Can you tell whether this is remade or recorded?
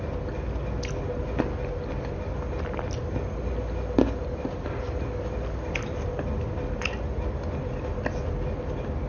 recorded